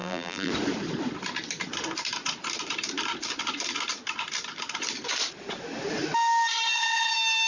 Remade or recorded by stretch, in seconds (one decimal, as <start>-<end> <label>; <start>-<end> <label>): 0.0-0.5 remade; 0.5-7.5 recorded